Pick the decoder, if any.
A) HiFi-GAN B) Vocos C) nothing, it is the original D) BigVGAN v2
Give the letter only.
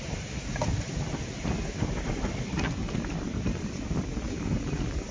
C